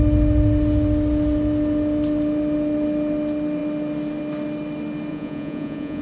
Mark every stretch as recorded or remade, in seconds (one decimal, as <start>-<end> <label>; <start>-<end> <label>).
0.0-5.1 recorded; 5.1-6.0 remade